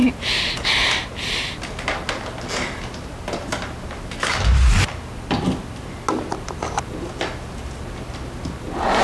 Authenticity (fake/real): real